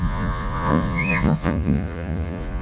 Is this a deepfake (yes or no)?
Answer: yes